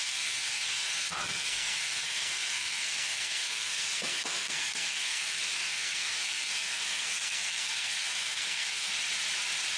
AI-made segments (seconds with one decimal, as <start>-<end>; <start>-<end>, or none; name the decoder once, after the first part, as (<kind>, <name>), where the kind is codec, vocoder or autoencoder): 0.0-8.9 (codec, SNAC)